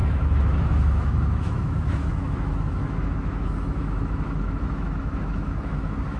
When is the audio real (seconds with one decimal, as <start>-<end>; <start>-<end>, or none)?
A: none